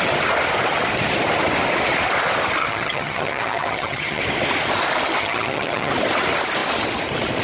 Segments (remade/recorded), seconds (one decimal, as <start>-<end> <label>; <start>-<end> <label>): 0.0-2.6 recorded; 2.6-4.2 remade; 4.2-5.2 recorded; 5.2-5.9 remade; 5.9-7.4 recorded

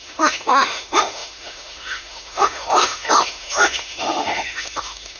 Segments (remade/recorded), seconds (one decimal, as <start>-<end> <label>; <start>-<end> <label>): 0.0-5.2 remade

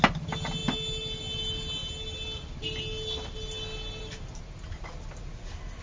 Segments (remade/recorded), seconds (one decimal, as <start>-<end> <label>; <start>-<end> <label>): 0.0-5.8 recorded

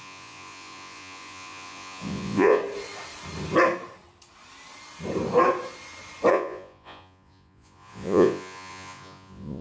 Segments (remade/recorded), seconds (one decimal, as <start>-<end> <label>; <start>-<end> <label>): 0.0-2.6 remade; 2.6-6.3 recorded; 6.3-9.6 remade

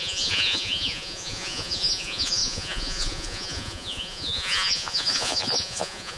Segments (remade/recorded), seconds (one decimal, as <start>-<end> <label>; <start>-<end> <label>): 0.0-6.2 remade

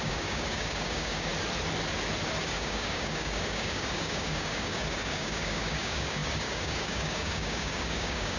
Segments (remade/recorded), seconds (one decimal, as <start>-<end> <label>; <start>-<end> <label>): 0.0-1.3 remade; 1.3-2.4 recorded; 2.4-8.4 remade

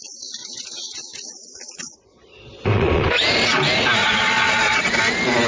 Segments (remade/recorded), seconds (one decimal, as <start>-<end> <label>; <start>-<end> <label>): 0.0-0.4 recorded; 0.4-3.1 remade; 3.1-4.0 recorded; 4.0-4.8 remade; 4.8-5.5 recorded